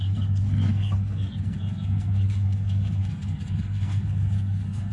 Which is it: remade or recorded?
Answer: remade